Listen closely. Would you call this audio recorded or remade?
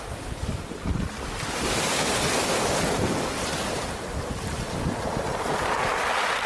recorded